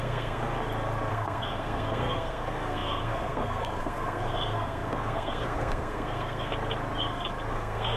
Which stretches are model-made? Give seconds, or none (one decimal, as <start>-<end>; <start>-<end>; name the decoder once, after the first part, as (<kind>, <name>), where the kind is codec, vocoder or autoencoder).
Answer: 0.0-0.4 (codec, SNAC); 1.1-6.5; 7.5-8.0